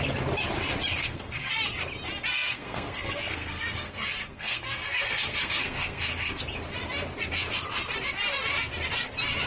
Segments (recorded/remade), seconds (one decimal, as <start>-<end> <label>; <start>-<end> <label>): 0.0-1.0 recorded; 1.0-1.6 remade; 1.6-2.3 recorded; 2.3-6.4 remade; 6.4-9.5 recorded